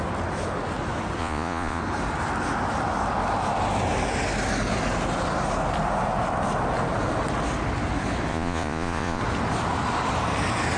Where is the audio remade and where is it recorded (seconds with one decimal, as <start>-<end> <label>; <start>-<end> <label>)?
0.0-1.2 recorded; 1.2-1.8 remade; 1.8-8.3 recorded; 8.3-9.2 remade; 9.2-10.8 recorded